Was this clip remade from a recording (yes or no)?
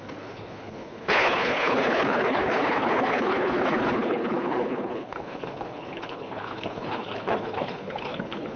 yes